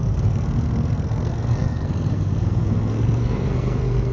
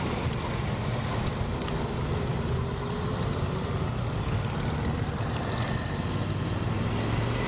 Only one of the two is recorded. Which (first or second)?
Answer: second